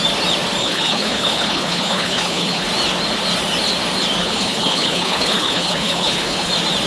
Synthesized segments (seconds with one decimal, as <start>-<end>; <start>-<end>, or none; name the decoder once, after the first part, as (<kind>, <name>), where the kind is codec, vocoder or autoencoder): 0.6-2.7 (codec, HILCodec); 4.2-6.5